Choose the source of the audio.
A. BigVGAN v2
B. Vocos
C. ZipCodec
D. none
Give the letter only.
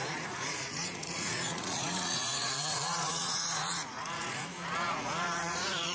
B